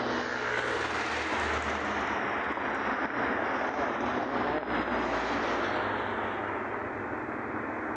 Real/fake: real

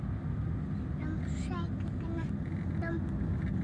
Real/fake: real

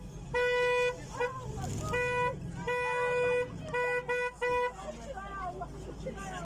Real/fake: real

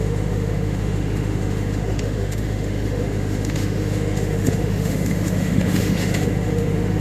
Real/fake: fake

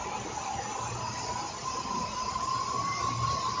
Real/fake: real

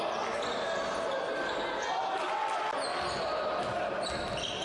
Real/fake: real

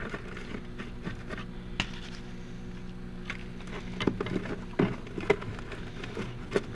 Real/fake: real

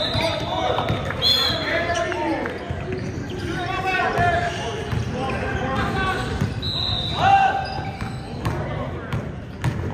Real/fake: real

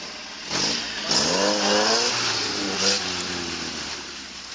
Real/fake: real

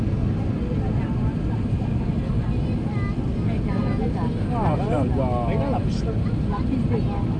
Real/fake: real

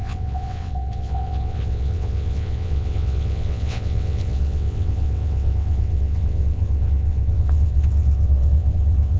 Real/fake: fake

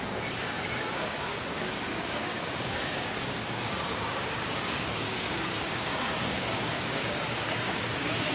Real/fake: fake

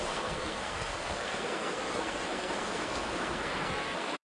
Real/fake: fake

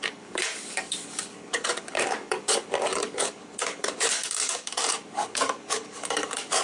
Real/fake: fake